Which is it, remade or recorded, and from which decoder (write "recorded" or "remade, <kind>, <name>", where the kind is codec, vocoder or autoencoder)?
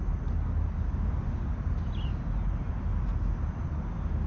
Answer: recorded